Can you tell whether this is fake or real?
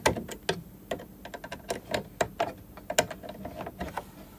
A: real